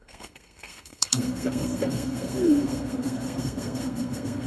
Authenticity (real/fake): fake